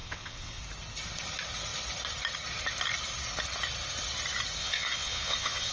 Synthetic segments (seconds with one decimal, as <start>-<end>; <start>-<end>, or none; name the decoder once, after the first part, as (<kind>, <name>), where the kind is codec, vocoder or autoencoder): 0.0-0.6 (vocoder, WaveNeXt); 4.6-5.7